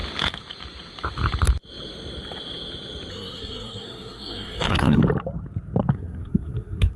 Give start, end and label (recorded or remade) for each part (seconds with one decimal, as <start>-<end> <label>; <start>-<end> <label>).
0.0-3.1 recorded; 3.1-5.0 remade; 5.0-5.9 recorded; 5.9-7.0 remade